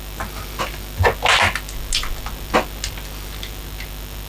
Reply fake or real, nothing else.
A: real